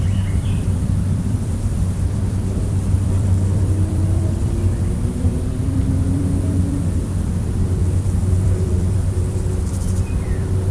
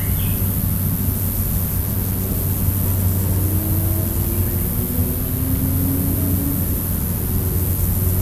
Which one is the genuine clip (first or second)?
second